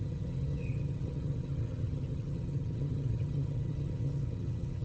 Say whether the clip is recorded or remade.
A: remade